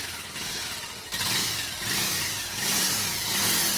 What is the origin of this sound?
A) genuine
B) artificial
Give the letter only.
A